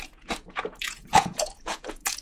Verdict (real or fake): fake